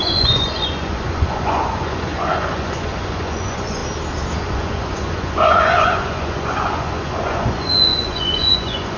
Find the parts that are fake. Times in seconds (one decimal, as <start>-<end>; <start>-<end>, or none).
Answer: 0.0-3.8; 4.4-9.0